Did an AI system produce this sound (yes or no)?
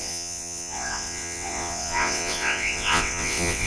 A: yes